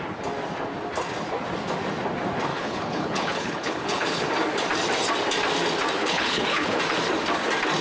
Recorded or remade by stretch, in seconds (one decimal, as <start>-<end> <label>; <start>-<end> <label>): 0.0-2.5 recorded; 2.5-4.3 remade; 4.3-6.0 recorded; 6.0-6.8 remade; 6.8-7.8 recorded